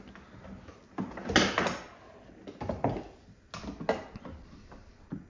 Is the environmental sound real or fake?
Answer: real